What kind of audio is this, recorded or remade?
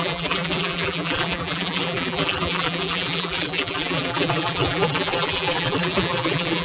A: remade